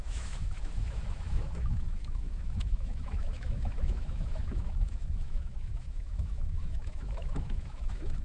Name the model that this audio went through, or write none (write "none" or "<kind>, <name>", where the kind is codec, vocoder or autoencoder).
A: autoencoder, DAC-VAE